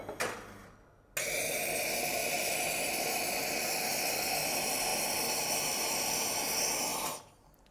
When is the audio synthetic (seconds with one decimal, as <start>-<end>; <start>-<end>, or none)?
none